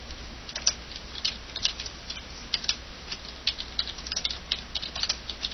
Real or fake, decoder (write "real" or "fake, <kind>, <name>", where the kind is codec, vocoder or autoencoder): real